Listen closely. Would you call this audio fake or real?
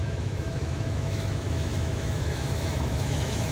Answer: fake